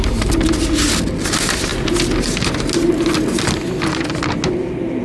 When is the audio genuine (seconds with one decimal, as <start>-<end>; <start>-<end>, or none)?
0.0-5.0